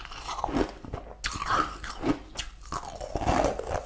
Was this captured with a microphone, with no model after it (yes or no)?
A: yes